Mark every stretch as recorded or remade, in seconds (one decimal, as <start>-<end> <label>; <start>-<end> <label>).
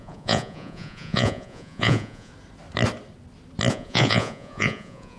0.0-2.3 remade; 2.3-3.7 recorded; 3.7-5.2 remade